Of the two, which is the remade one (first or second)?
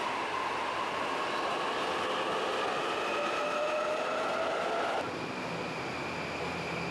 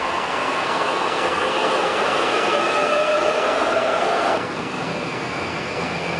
second